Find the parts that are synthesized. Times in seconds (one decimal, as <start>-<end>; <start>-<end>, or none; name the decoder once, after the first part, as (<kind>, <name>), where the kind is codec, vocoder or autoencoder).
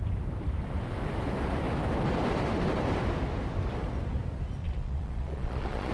4.6-5.9 (vocoder, Vocos)